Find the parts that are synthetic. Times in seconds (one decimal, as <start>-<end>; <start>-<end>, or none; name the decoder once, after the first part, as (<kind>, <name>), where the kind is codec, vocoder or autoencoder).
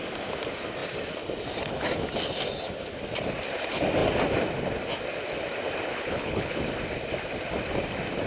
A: 5.9-6.6 (codec, HILCodec)